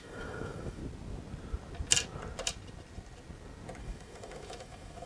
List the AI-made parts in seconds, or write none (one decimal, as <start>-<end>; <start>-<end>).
0.0-0.8; 3.8-5.1